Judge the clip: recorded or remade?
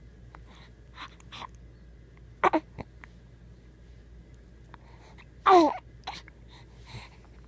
recorded